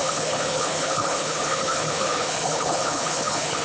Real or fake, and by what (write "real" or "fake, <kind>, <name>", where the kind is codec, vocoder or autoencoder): fake, codec, HILCodec